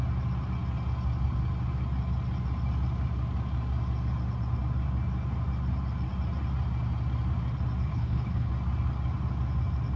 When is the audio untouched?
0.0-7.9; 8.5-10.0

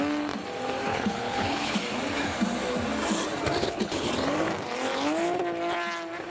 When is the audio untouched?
0.0-0.9; 1.8-3.6; 4.1-6.3

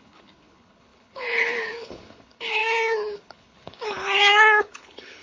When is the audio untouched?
none

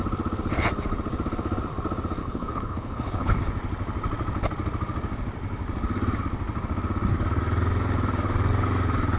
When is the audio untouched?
0.0-2.2; 3.4-9.2